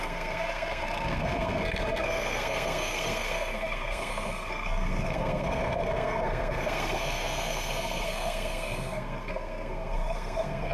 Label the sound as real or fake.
fake